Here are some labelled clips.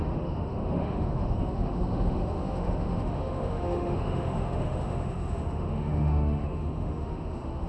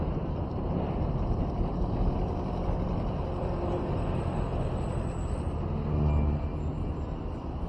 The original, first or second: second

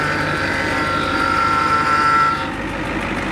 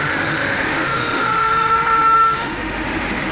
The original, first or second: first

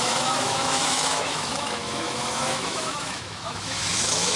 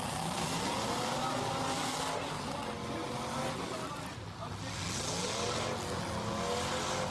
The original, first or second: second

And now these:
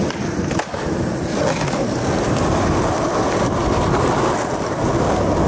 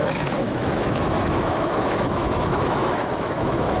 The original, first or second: first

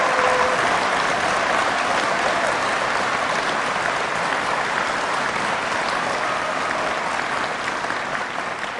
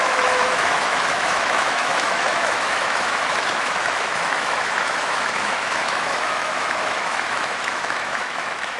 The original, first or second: first